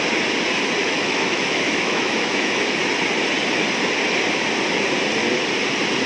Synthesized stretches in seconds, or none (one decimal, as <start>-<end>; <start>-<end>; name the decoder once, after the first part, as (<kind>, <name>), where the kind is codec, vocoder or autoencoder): 0.8-2.7 (autoencoder, DAC-VAE)